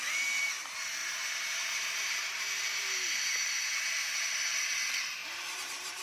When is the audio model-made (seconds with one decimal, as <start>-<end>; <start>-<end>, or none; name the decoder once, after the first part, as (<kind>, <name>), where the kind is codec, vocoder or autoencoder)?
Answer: 1.0-4.6 (vocoder, BigVGAN v2); 5.2-6.0

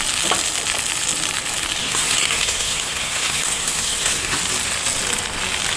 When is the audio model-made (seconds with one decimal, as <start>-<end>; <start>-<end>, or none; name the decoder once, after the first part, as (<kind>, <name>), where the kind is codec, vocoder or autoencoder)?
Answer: 1.8-4.4 (codec, SNAC)

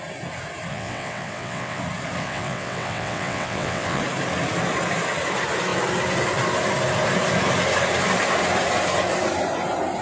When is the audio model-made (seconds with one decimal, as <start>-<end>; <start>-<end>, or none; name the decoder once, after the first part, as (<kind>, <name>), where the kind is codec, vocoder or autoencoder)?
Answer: 0.7-1.8 (vocoder, WaveNeXt); 2.2-4.0

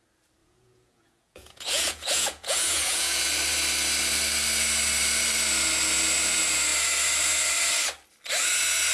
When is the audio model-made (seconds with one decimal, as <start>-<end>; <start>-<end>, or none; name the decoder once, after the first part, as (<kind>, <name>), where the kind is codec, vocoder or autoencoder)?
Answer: 0.4-3.3 (vocoder, Vocos)

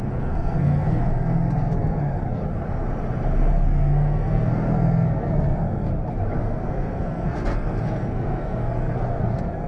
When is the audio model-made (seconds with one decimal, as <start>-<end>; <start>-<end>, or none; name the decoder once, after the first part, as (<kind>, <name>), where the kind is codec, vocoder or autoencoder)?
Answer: 0.0-2.4 (codec, SNAC); 3.5-5.9; 6.4-9.7